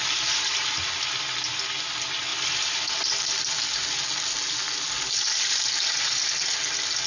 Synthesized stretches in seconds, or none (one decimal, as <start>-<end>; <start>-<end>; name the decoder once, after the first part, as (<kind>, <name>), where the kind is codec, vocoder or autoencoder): none